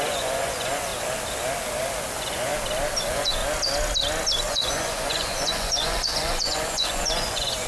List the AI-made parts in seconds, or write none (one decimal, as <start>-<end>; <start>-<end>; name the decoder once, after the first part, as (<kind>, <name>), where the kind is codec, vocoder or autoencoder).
0.0-0.9 (vocoder, Vocos); 2.1-2.5; 3.0-3.4; 4.5-7.7